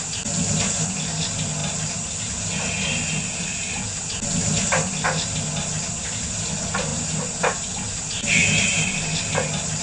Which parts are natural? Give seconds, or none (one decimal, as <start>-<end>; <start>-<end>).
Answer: 0.0-1.6; 2.5-9.8